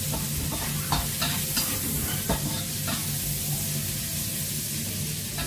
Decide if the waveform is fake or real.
real